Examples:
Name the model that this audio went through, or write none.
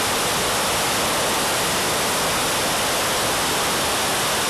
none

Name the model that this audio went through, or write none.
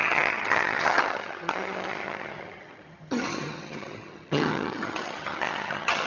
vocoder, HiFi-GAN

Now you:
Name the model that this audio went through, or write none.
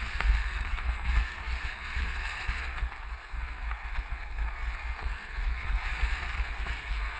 codec, SNAC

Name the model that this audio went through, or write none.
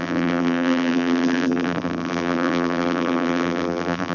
vocoder, BigVGAN v2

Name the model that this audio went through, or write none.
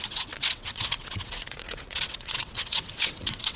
vocoder, WaveNeXt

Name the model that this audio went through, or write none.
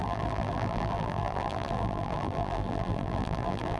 vocoder, BigVGAN v2